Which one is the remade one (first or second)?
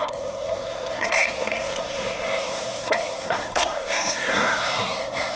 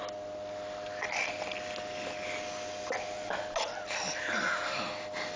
first